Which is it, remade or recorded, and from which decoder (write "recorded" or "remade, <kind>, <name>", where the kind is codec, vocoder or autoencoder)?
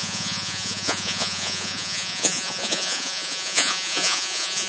remade, vocoder, Vocos